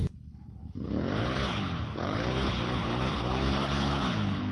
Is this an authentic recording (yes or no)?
no